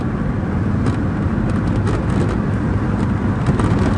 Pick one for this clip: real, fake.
real